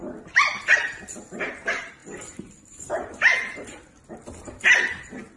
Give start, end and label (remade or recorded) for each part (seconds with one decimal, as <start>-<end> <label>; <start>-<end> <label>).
0.0-1.5 remade; 1.5-5.4 recorded